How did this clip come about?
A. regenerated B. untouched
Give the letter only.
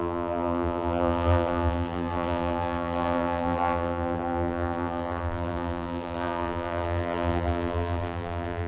A